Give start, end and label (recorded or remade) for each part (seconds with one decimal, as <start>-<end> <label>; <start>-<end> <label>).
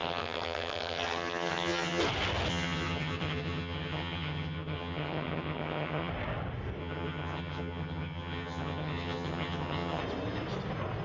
0.0-2.0 remade; 2.0-2.5 recorded; 2.5-6.1 remade; 6.1-6.8 recorded; 6.8-10.0 remade; 10.0-11.0 recorded